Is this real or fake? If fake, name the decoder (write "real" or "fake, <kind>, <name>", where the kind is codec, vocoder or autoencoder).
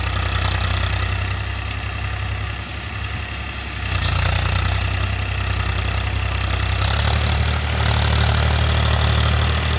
real